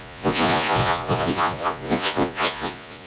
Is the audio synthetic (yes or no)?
yes